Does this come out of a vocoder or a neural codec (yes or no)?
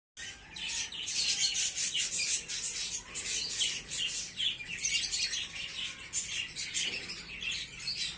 no